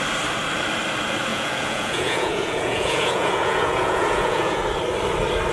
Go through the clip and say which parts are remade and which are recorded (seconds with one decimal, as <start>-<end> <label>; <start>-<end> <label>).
0.0-1.3 recorded; 1.3-4.6 remade; 4.6-5.5 recorded